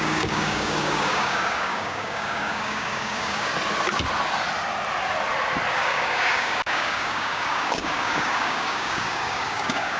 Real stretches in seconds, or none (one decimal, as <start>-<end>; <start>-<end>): 3.5-5.7